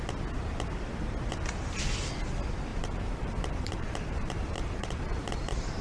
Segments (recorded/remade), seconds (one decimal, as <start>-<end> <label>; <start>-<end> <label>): 0.0-2.7 recorded; 2.7-5.8 remade

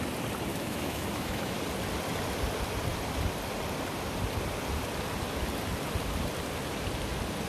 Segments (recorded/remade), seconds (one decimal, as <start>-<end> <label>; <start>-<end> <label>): 0.0-0.5 recorded; 0.5-1.6 remade; 1.6-7.5 recorded

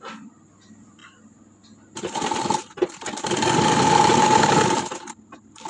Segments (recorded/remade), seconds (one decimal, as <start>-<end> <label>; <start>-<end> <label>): 0.0-5.7 recorded

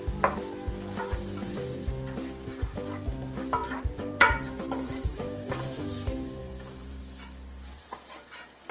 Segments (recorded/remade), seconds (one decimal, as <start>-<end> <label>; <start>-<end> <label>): 0.0-3.6 recorded; 3.6-5.8 remade; 5.8-6.4 recorded; 6.4-7.0 remade; 7.0-8.7 recorded

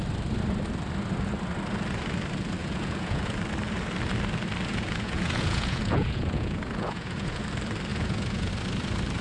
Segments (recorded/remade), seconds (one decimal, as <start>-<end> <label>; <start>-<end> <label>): 0.0-2.6 recorded; 2.6-3.4 remade; 3.4-4.7 recorded; 4.7-7.4 remade; 7.4-7.9 recorded; 7.9-8.5 remade; 8.5-9.2 recorded